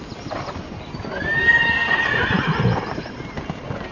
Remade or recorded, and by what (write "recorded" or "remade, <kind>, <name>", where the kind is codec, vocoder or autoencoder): recorded